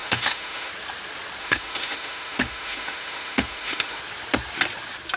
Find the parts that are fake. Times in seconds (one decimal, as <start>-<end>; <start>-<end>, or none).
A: 0.0-0.7; 1.4-4.0